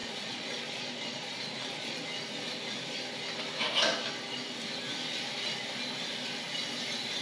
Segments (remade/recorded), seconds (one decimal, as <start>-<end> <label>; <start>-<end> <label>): 0.0-2.0 remade; 2.0-7.2 recorded